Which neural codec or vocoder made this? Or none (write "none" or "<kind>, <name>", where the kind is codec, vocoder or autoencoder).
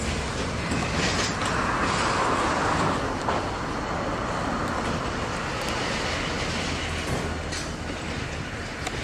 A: none